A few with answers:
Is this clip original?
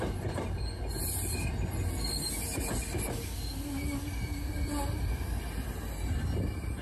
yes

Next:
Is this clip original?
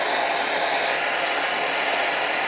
yes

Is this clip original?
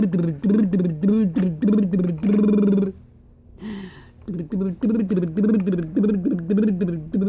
yes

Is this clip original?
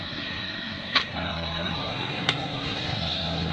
no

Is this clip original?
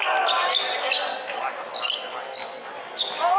yes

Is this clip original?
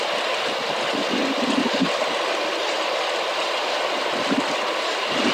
yes